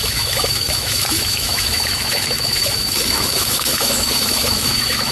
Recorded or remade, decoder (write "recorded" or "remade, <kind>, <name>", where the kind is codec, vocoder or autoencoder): remade, autoencoder, DAC-VAE